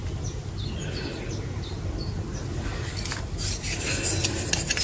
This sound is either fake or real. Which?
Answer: real